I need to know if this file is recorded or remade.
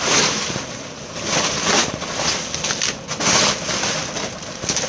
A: recorded